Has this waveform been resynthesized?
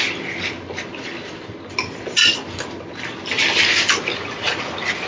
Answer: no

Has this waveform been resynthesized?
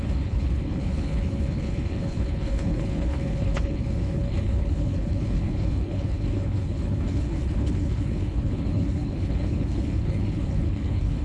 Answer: yes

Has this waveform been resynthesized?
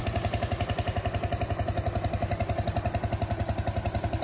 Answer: no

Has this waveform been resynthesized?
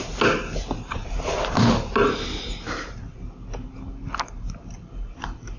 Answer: no